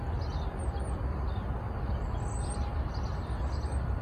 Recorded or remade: recorded